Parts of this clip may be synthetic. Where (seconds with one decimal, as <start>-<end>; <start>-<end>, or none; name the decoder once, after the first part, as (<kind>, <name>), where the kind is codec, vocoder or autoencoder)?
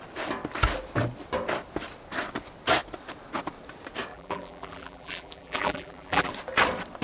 4.1-6.3 (vocoder, BigVGAN v2)